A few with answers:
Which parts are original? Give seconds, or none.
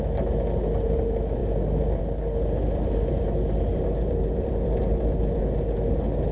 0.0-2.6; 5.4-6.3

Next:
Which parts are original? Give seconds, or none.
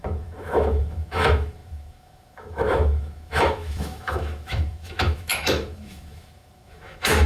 none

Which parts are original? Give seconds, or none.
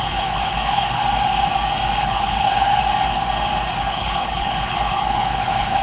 1.0-2.0; 2.8-3.8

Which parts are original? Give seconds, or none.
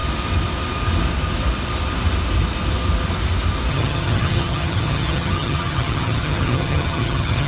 0.0-3.7